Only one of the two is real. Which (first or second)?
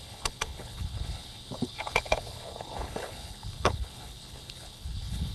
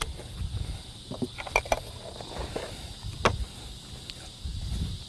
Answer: second